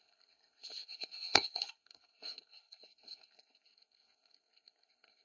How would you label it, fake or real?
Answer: fake